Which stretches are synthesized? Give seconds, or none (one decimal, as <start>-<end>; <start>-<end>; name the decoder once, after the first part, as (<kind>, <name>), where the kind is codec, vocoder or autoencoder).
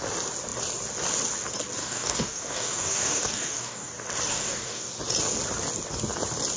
1.8-3.9 (codec, DAC); 4.3-4.9